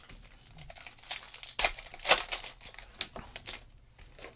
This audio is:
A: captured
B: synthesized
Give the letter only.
A